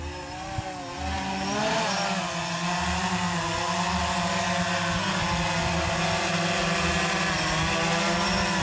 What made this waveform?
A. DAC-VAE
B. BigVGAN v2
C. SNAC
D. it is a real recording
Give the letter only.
D